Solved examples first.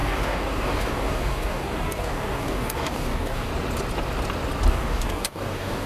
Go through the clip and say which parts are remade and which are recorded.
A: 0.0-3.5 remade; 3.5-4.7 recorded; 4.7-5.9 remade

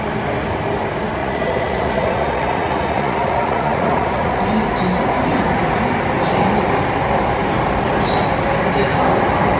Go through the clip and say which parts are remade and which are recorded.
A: 0.0-1.2 recorded; 1.2-4.4 remade; 4.4-9.6 recorded

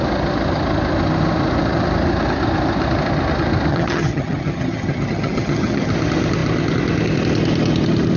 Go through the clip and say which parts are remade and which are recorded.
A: 0.0-3.7 recorded; 3.7-5.9 remade; 5.9-8.2 recorded

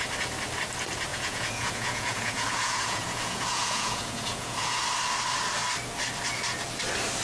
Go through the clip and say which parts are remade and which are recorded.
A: 0.0-1.1 recorded; 1.1-4.8 remade; 4.8-7.2 recorded

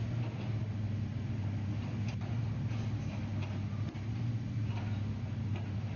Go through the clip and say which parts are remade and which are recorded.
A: 0.0-6.0 recorded